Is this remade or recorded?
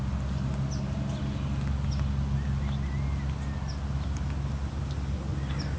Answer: recorded